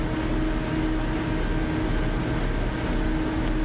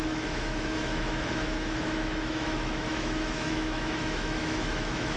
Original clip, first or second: first